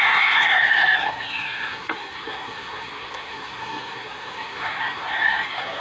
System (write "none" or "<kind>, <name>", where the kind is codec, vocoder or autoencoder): codec, SNAC